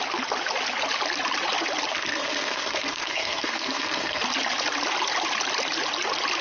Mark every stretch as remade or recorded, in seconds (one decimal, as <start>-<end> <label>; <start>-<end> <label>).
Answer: 0.0-1.9 recorded; 1.9-4.2 remade; 4.2-6.4 recorded